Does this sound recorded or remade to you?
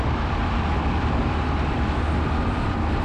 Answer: remade